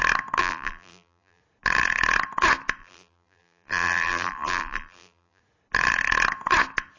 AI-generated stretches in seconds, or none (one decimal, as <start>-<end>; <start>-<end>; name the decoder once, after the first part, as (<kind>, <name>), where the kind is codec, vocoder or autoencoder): 0.4-1.4 (vocoder, BigVGAN v2); 2.8-5.4